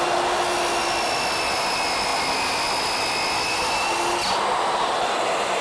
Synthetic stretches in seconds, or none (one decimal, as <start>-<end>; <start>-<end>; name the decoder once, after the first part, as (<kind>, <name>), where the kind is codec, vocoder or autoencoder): none